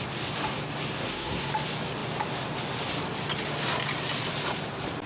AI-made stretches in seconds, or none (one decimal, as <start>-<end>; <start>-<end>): 1.0-1.5